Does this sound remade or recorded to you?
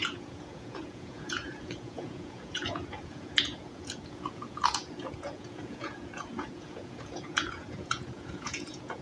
remade